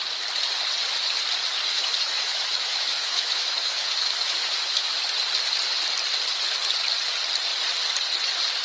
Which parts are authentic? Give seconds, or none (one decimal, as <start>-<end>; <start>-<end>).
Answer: 0.0-1.7; 5.0-8.6